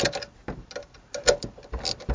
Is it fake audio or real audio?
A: real